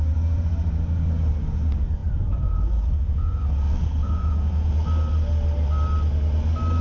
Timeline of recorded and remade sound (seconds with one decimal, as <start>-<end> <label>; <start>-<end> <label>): 0.0-2.0 recorded; 2.0-3.4 remade; 3.4-4.0 recorded; 4.0-4.7 remade; 4.7-6.8 recorded